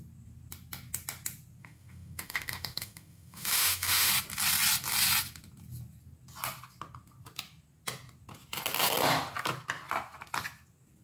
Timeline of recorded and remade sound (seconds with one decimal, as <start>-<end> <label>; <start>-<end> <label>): 0.0-1.6 recorded; 1.6-4.1 remade; 4.1-11.0 recorded